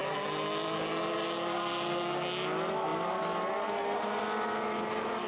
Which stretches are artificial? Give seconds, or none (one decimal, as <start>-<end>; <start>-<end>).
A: none